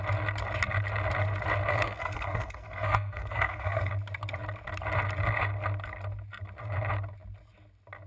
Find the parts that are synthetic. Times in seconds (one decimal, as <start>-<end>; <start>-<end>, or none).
1.7-3.9